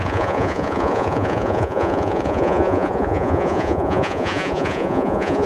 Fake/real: fake